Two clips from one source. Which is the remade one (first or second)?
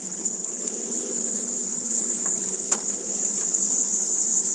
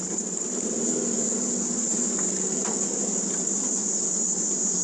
first